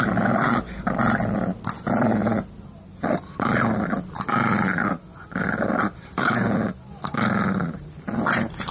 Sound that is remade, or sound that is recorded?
recorded